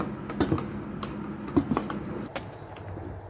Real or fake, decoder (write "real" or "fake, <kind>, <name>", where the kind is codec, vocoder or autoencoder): real